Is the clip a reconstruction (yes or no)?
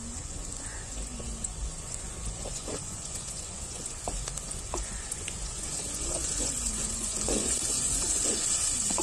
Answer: yes